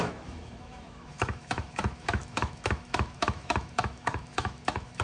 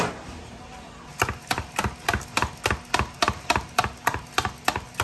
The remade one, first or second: first